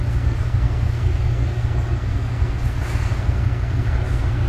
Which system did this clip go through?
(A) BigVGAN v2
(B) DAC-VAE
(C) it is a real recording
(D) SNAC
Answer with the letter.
D